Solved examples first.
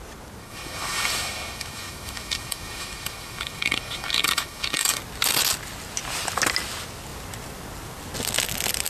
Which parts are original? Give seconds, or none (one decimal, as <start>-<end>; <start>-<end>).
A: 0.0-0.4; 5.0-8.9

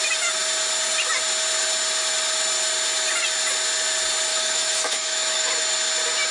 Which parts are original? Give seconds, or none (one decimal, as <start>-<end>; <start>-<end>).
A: 0.0-4.3; 5.5-6.3

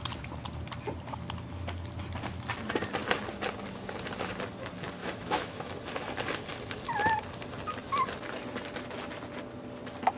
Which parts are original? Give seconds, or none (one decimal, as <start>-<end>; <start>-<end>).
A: 0.0-5.0; 5.7-10.2